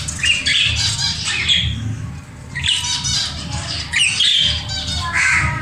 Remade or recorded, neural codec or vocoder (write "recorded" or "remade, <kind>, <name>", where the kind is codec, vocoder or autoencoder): recorded